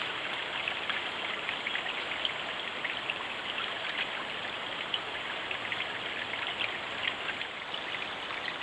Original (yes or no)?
yes